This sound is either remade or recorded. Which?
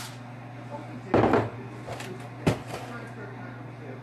recorded